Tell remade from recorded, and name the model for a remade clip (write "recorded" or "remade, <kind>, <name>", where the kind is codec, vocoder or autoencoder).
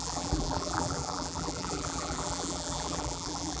remade, vocoder, BigVGAN v2